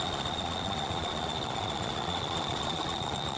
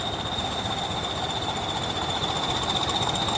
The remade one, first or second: first